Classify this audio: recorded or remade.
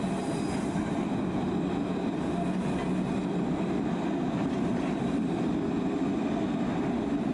recorded